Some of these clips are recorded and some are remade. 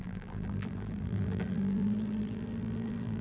remade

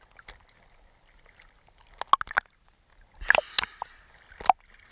recorded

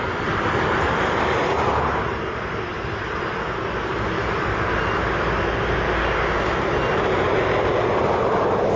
recorded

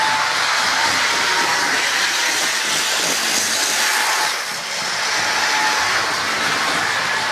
recorded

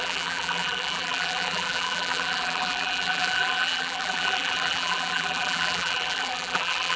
remade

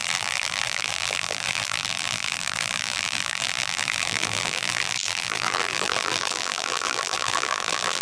remade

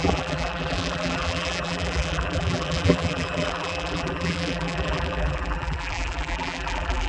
remade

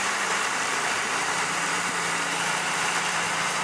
remade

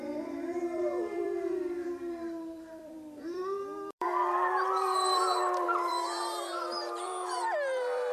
remade